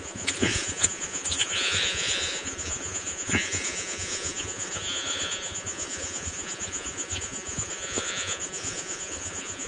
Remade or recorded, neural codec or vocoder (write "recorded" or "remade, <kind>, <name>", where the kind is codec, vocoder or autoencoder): remade, vocoder, Vocos